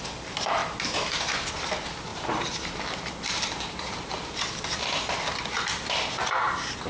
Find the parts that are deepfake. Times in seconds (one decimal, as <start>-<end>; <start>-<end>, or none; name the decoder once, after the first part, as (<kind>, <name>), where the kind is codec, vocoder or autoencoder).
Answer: 2.1-6.2 (vocoder, BigVGAN v2)